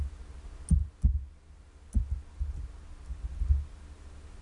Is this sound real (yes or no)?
yes